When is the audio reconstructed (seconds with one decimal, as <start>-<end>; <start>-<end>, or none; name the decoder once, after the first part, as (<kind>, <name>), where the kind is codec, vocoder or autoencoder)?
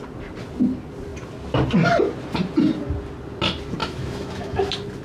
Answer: 3.8-4.6 (autoencoder, DAC-VAE)